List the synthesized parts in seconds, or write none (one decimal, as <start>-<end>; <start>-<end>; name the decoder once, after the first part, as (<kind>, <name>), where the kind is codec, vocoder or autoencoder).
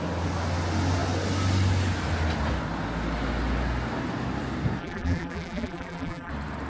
4.8-6.3 (vocoder, BigVGAN v2)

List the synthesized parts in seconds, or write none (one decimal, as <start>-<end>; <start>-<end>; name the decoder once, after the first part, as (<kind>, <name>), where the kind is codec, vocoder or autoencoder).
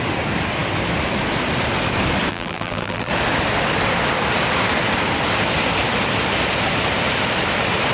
2.3-3.1 (vocoder, BigVGAN v2)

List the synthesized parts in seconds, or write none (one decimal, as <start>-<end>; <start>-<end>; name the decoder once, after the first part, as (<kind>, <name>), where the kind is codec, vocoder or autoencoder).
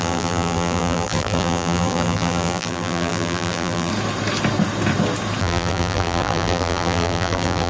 0.0-3.9 (vocoder, BigVGAN v2); 5.4-7.7